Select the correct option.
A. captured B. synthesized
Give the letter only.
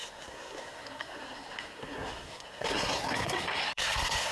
B